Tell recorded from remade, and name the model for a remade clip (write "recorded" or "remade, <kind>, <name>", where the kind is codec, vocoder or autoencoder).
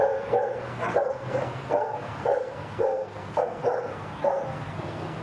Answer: remade, codec, SNAC